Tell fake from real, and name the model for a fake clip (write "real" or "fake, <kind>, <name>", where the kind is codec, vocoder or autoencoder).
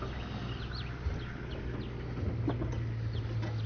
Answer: real